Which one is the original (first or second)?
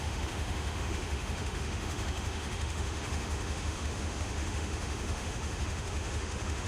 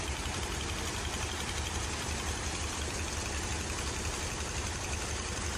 second